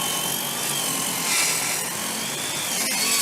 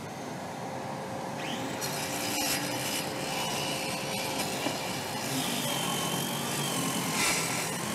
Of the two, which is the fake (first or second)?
second